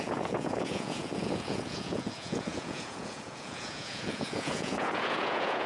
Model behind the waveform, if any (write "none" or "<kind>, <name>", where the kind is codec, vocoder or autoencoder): vocoder, Vocos